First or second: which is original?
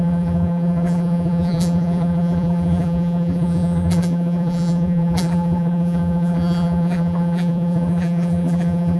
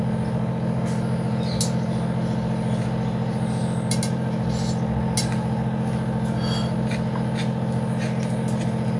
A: second